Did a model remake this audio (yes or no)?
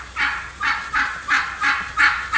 no